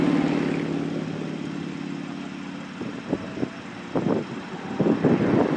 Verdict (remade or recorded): recorded